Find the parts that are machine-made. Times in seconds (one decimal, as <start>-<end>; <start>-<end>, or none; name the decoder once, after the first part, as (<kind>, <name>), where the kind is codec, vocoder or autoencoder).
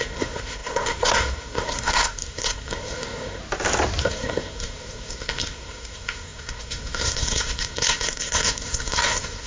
0.0-3.4 (codec, SNAC); 4.0-9.5